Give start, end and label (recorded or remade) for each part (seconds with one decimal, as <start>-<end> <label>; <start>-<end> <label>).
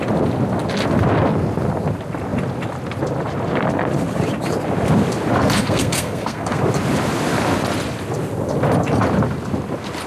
0.0-5.6 recorded; 5.6-6.6 remade; 6.6-10.1 recorded